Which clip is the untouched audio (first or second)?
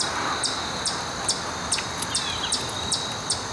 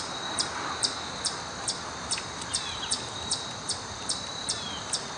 first